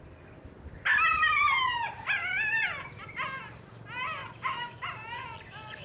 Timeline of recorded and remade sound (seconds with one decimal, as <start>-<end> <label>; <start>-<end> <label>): 0.0-1.1 recorded; 1.1-3.1 remade; 3.1-4.2 recorded; 4.2-5.1 remade; 5.1-5.8 recorded